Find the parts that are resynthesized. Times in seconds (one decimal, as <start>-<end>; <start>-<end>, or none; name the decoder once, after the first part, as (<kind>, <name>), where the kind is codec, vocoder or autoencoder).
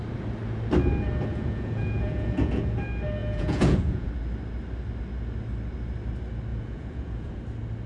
1.3-2.6 (vocoder, Vocos); 3.2-4.1; 6.5-7.4